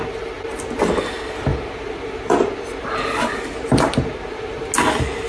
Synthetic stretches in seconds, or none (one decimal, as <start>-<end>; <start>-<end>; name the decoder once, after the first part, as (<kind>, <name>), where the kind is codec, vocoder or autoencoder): 1.5-4.7 (vocoder, BigVGAN v2)